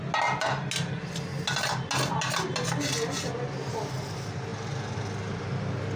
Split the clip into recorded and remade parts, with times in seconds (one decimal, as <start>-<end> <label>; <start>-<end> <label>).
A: 0.0-6.0 recorded